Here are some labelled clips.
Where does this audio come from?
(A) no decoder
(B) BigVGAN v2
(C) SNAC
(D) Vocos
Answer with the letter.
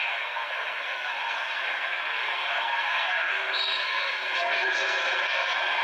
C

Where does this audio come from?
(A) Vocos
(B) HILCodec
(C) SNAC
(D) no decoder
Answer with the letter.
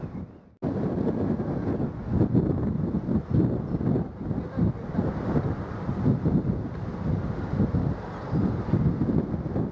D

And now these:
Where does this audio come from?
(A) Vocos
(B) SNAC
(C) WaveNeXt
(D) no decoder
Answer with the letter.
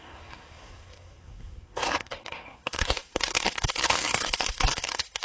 B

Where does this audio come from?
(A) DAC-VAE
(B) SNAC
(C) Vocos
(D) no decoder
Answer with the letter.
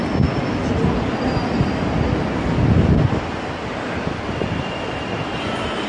D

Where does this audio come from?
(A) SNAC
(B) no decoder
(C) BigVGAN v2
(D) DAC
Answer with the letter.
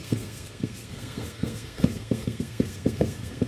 A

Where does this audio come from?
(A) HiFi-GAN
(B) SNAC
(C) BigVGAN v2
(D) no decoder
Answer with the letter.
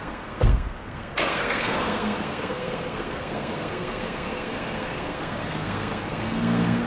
B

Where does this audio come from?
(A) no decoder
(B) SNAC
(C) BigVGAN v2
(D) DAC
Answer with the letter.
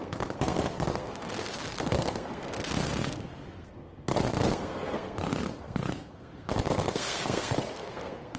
B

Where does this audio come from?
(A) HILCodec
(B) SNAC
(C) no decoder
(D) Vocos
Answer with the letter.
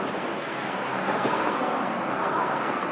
B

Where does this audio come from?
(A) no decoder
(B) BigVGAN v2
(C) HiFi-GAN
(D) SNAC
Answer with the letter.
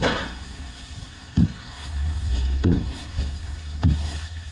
D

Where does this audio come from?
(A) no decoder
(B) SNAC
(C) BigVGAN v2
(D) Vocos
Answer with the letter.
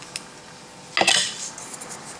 A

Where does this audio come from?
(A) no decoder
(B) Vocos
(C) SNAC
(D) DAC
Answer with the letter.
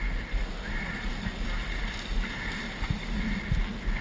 A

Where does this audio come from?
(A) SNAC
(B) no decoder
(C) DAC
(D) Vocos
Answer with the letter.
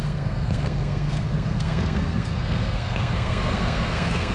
A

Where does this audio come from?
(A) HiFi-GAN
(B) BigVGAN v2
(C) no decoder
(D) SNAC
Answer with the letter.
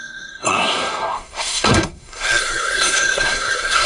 D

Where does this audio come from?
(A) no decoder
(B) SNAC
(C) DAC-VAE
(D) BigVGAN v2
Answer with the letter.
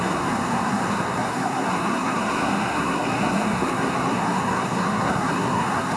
B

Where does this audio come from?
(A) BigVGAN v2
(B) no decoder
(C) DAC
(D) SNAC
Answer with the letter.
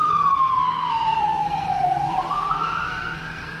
D